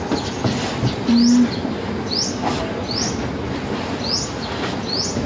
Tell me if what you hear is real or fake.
real